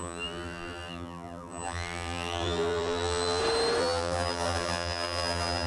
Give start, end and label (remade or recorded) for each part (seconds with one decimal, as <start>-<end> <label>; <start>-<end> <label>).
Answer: 0.0-3.4 remade; 3.4-3.8 recorded; 3.8-5.7 remade